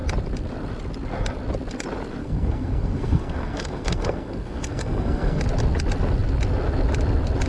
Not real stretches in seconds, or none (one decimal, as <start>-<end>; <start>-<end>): 2.2-5.4